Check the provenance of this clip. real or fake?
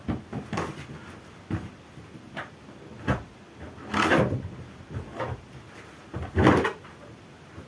real